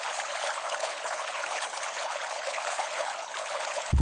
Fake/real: fake